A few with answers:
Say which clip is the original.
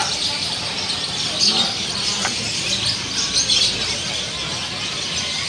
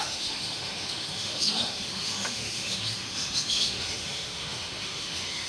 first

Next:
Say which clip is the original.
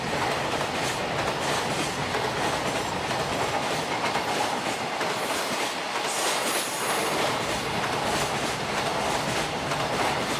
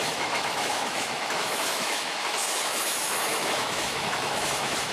first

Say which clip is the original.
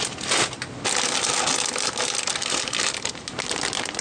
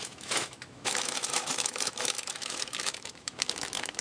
first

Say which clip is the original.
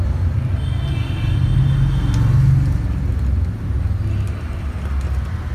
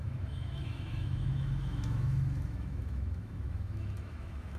first